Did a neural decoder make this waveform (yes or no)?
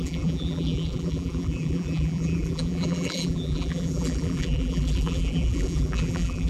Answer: yes